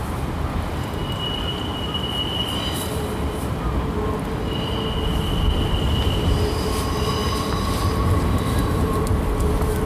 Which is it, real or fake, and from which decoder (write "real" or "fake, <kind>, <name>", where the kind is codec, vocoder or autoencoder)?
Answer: real